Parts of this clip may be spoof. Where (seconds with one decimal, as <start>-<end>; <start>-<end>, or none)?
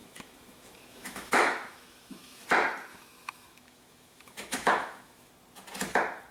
0.0-2.4; 2.9-5.3